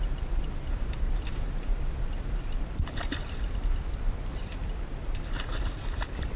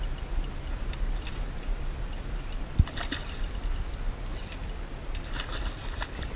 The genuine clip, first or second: second